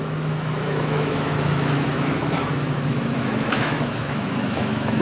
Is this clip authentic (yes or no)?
no